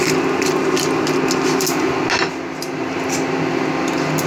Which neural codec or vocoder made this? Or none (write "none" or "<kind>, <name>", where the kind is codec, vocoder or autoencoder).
none